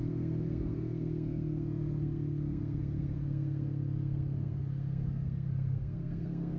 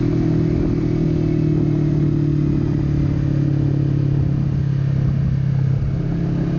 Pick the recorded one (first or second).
second